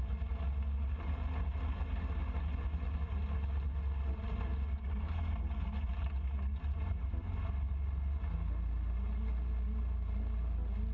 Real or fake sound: real